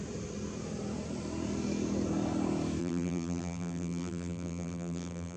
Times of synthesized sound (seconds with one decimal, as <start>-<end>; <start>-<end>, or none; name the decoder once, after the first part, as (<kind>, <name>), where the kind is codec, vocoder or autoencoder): 2.8-5.4 (vocoder, BigVGAN v2)